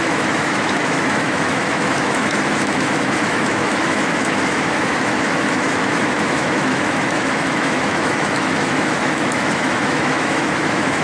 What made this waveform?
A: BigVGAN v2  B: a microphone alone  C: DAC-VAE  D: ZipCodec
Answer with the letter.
C